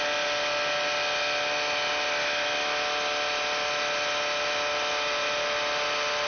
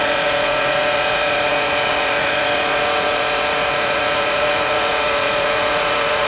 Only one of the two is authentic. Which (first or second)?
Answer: first